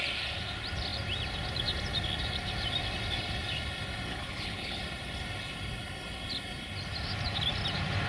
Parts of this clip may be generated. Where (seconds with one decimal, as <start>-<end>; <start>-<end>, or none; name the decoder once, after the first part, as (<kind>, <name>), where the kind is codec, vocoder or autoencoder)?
4.1-4.8 (codec, HILCodec)